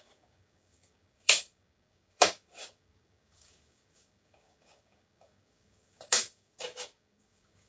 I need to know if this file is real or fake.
fake